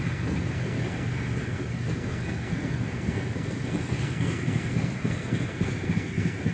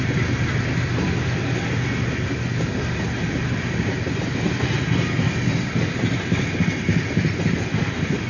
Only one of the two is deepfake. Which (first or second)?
first